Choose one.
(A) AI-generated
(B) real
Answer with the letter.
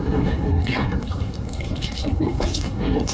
A